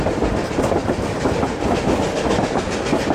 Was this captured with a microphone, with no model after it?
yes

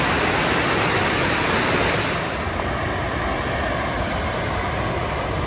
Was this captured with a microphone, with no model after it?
yes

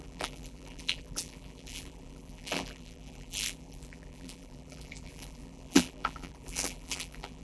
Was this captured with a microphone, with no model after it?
no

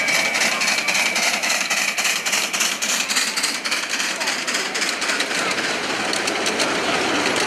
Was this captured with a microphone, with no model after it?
no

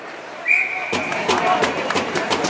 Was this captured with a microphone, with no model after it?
no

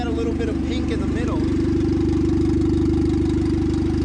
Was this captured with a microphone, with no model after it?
yes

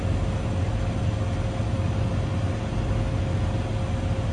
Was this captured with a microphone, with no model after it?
yes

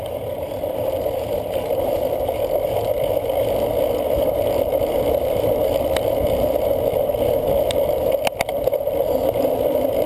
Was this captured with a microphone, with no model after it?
yes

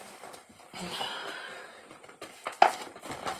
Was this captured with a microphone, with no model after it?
yes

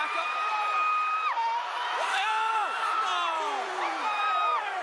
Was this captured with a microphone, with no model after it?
no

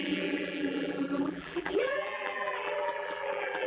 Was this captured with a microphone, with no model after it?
no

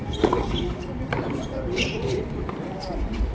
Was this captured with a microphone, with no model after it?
no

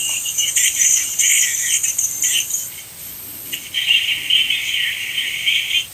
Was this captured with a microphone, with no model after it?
no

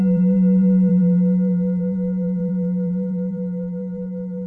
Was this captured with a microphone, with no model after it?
no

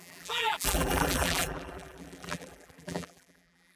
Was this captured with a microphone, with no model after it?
no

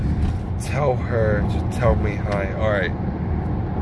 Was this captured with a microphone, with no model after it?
yes